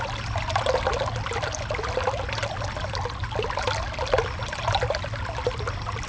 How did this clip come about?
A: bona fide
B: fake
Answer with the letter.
A